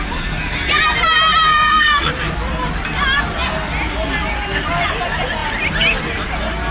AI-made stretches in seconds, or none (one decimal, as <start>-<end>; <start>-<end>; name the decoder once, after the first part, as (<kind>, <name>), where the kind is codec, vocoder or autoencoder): 1.5-2.1 (codec, SNAC)

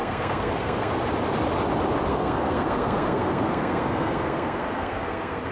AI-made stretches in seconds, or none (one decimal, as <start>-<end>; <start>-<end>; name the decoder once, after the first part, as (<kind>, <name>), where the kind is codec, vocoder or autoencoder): 0.0-0.9 (codec, SNAC); 2.1-5.5

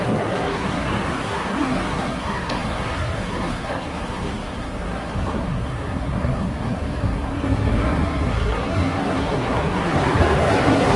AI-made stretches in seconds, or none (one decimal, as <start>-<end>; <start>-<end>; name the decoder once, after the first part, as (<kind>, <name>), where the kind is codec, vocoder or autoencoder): 0.0-11.0 (codec, SNAC)